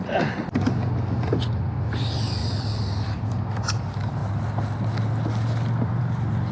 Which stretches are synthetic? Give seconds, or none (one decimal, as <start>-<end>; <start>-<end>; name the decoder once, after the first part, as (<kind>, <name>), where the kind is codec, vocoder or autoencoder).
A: 2.4-3.3 (vocoder, BigVGAN v2)